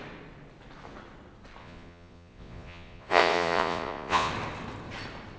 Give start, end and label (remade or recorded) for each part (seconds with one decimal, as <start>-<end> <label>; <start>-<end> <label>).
0.0-1.6 recorded; 1.6-4.3 remade; 4.3-5.4 recorded